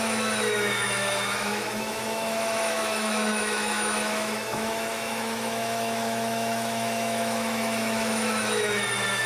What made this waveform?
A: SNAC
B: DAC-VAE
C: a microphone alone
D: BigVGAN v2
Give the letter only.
B